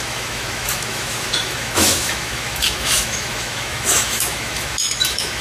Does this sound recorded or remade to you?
remade